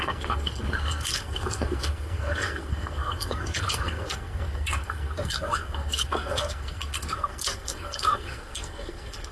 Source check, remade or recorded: remade